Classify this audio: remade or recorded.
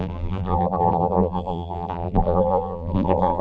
remade